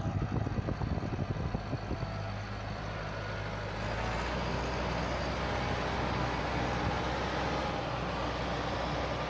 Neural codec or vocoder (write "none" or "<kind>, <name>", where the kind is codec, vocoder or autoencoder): none